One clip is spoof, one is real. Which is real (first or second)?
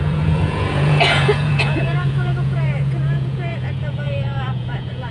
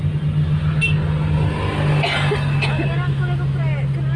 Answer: second